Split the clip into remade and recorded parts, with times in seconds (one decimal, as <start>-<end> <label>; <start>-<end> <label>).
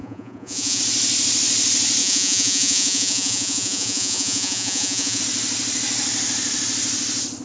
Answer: 0.0-0.8 remade; 0.8-2.0 recorded; 2.0-5.2 remade; 5.2-7.4 recorded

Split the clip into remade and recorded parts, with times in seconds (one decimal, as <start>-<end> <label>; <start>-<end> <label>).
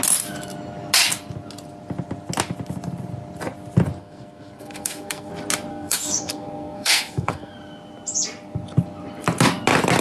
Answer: 0.0-4.0 recorded; 4.0-5.3 remade; 5.3-5.7 recorded; 5.7-7.5 remade; 7.5-10.0 recorded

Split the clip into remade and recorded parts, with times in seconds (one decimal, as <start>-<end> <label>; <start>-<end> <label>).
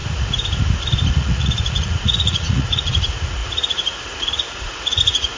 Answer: 0.0-1.1 recorded; 1.1-5.4 remade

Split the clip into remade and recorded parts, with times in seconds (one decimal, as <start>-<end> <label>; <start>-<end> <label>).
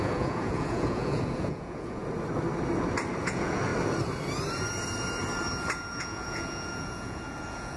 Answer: 0.0-2.0 remade; 2.0-3.2 recorded; 3.2-3.7 remade; 3.7-5.9 recorded; 5.9-7.8 remade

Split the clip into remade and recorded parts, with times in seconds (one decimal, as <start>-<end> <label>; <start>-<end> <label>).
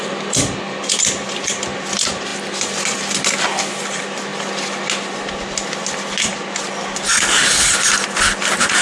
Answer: 0.0-8.8 recorded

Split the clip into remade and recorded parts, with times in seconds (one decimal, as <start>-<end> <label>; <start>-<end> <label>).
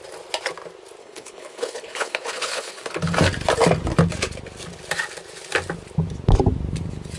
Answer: 0.0-1.0 recorded; 1.0-2.9 remade; 2.9-7.2 recorded